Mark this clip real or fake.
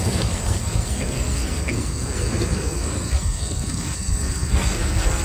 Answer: fake